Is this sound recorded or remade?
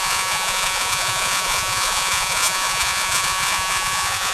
remade